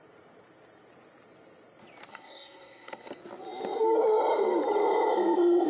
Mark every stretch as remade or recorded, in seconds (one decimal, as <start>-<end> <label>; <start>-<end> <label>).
0.0-2.1 recorded; 2.1-3.1 remade; 3.1-5.7 recorded